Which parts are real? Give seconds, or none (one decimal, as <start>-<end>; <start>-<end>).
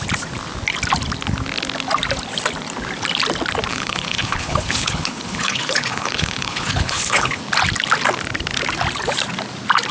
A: 0.0-3.7; 7.4-9.9